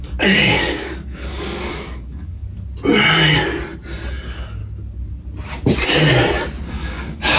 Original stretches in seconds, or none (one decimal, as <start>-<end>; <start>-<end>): 2.4-4.1; 4.6-6.7